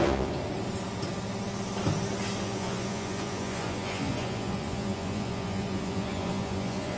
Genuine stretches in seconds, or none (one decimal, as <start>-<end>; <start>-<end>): 0.4-2.4